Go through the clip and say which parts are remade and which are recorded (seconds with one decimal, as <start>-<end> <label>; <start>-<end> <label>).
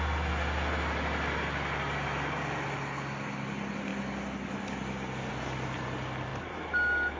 0.0-7.2 recorded